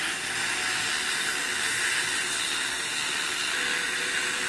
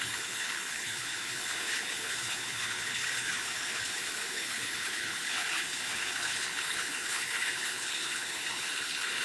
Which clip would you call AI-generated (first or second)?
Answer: second